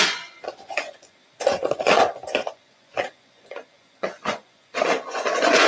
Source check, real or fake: fake